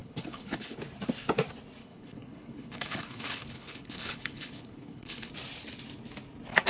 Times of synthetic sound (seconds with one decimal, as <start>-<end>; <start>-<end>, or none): 0.0-0.8; 1.8-5.3